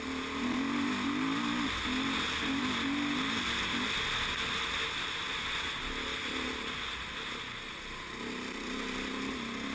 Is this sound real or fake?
real